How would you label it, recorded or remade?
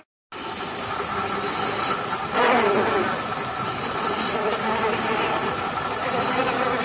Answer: recorded